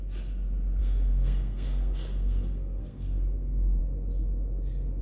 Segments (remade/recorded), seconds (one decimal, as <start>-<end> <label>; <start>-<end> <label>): 0.0-0.8 recorded; 0.8-3.8 remade; 3.8-5.0 recorded